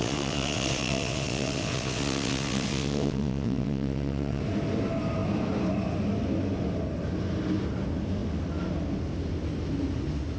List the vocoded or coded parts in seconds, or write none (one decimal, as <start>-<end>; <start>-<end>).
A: 0.0-4.4